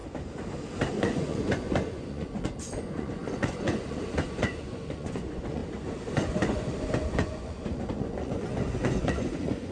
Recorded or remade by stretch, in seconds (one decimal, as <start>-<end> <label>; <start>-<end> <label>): 0.0-0.9 recorded; 0.9-5.6 remade; 5.6-6.1 recorded; 6.1-9.7 remade